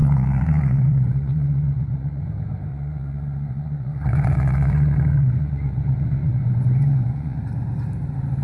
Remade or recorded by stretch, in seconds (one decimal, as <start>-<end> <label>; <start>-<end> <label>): 0.0-2.2 remade; 2.2-2.7 recorded; 2.7-7.4 remade; 7.4-8.4 recorded